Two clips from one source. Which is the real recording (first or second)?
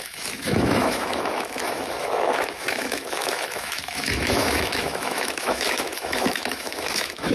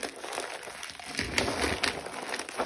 second